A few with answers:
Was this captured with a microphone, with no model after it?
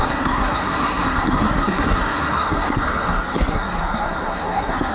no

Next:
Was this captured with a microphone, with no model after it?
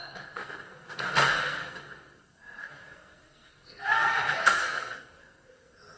no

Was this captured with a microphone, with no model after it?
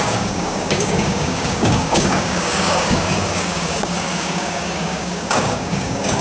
no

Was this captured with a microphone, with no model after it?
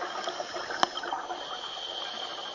yes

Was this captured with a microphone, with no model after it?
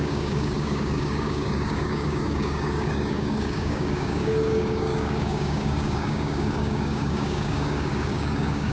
no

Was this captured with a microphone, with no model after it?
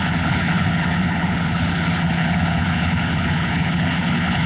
no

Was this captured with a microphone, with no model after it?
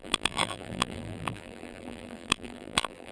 no